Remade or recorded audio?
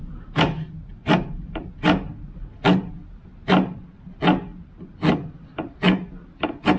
recorded